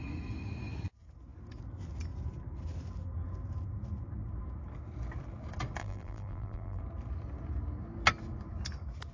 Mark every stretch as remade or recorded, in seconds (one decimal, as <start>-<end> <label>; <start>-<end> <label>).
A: 0.0-5.8 recorded; 5.8-6.8 remade; 6.8-9.1 recorded